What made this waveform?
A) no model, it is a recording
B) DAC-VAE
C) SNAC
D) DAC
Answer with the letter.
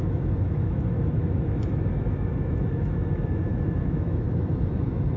B